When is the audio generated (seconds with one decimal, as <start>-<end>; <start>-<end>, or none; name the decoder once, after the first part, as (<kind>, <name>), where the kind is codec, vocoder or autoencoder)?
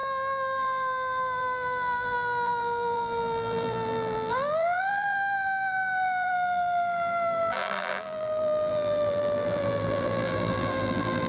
0.0-11.3 (vocoder, BigVGAN v2)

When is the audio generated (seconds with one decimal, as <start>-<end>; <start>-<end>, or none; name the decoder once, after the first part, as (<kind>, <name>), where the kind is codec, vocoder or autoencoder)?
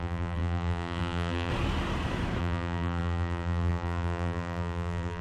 0.0-1.5 (vocoder, BigVGAN v2); 2.4-5.2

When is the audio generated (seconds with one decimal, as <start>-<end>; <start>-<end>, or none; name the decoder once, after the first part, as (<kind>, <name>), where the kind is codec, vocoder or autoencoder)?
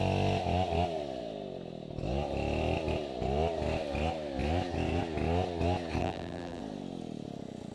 6.0-6.6 (vocoder, BigVGAN v2)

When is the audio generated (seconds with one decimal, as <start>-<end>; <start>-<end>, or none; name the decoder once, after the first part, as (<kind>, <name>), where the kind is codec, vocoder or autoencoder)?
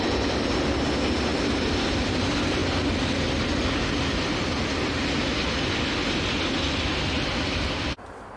0.0-2.6 (vocoder, BigVGAN v2); 7.6-8.4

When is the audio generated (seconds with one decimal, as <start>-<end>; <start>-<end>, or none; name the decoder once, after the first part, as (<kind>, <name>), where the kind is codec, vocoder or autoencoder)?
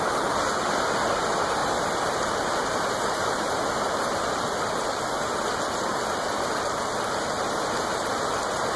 1.6-5.0 (vocoder, BigVGAN v2); 5.9-8.1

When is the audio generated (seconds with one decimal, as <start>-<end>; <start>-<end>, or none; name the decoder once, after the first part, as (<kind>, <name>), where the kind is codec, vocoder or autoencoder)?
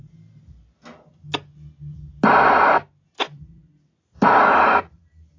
3.2-5.4 (vocoder, BigVGAN v2)